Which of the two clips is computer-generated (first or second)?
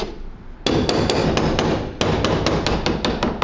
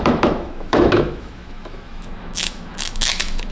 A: second